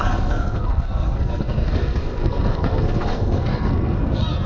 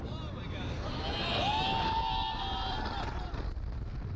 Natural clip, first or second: second